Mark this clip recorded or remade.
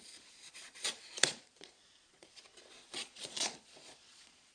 remade